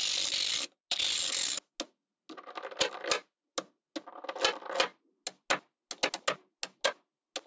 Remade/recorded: recorded